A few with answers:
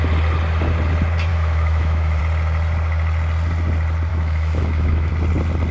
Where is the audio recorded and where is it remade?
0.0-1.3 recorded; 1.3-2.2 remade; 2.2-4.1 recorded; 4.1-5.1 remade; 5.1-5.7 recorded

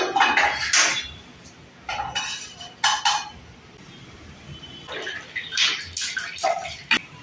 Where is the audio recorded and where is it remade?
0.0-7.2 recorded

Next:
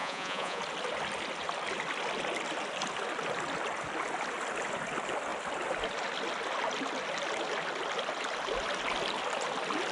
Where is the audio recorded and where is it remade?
0.0-0.6 remade; 0.6-9.9 recorded

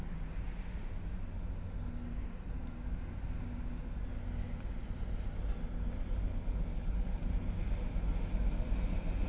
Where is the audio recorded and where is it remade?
0.0-6.7 recorded; 6.7-7.3 remade; 7.3-9.3 recorded